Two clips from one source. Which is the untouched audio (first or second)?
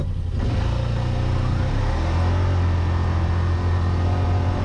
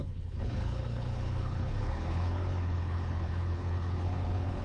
first